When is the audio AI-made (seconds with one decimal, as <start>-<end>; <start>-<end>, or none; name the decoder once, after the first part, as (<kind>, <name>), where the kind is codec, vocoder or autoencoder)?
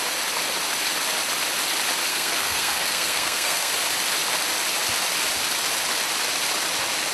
2.1-3.7 (codec, SNAC)